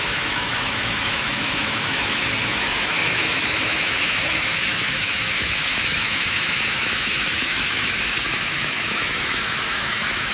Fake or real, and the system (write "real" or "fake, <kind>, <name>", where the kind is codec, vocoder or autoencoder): fake, autoencoder, DAC-VAE